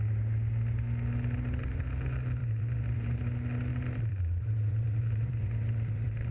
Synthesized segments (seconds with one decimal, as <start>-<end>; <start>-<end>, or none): 2.4-3.2; 3.7-6.3